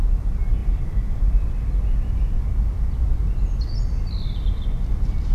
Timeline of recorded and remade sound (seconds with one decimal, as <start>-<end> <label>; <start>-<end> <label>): 0.0-5.3 recorded